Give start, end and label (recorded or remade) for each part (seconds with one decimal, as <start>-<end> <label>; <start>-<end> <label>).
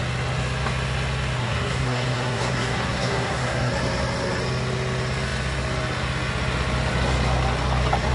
0.0-1.4 recorded; 1.4-3.7 remade; 3.7-8.1 recorded